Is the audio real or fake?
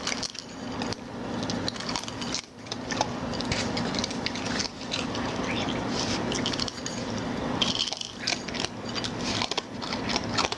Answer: real